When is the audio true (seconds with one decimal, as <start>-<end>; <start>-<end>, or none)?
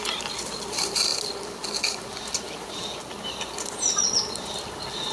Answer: 0.0-5.1